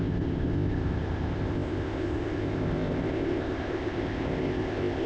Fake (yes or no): yes